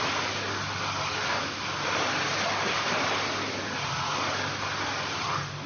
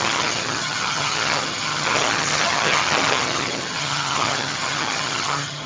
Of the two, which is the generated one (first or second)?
second